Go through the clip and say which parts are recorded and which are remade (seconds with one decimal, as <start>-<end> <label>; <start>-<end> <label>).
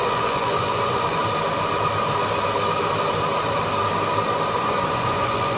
0.0-1.2 remade; 1.2-4.6 recorded; 4.6-5.6 remade